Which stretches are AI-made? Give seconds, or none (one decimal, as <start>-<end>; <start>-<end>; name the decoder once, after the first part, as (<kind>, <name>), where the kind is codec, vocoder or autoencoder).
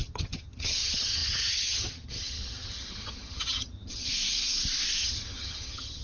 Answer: 0.0-4.1 (vocoder, HiFi-GAN); 5.0-6.0